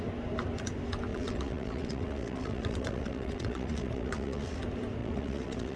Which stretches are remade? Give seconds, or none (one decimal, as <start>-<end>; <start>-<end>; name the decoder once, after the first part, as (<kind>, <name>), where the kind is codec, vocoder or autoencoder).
1.1-4.6 (vocoder, WaveNeXt); 5.0-5.8